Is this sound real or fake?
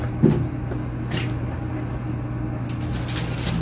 real